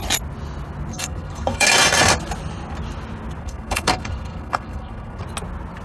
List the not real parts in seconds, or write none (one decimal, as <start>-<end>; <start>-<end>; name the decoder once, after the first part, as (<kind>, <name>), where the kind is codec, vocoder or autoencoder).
0.9-1.7 (codec, SNAC); 3.4-5.2